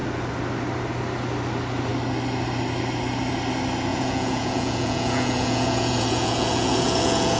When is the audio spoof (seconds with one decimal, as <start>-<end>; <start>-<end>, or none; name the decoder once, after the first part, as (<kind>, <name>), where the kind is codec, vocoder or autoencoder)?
3.9-7.4 (vocoder, Vocos)

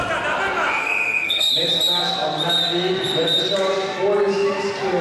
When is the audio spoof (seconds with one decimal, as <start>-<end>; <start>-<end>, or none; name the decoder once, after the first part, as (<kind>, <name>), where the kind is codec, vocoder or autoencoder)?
0.8-1.5 (codec, SNAC)

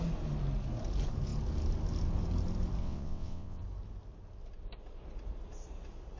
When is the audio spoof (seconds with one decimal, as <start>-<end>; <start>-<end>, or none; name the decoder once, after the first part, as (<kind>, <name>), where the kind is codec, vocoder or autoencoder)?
2.8-3.6 (vocoder, WaveNeXt)